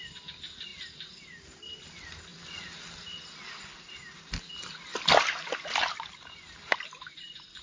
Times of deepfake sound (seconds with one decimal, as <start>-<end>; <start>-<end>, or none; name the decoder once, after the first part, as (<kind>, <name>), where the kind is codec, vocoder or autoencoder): none